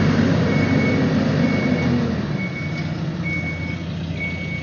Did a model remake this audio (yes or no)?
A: no